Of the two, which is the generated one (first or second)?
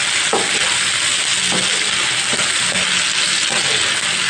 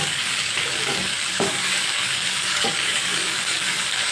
second